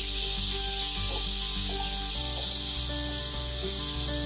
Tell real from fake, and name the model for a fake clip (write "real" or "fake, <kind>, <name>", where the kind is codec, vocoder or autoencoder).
real